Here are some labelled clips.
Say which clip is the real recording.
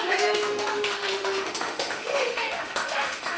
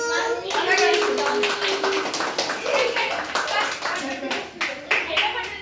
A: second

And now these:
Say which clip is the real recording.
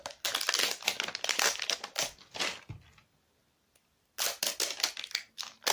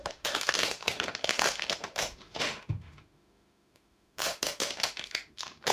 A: first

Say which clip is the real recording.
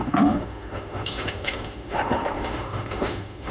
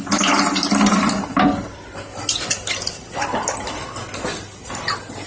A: second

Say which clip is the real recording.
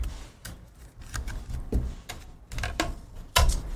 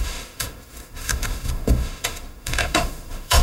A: first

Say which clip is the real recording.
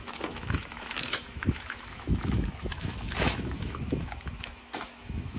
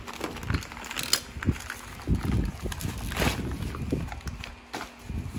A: second